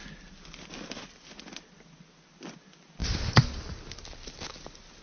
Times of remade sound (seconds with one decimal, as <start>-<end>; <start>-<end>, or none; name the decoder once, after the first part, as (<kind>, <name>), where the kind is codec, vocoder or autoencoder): none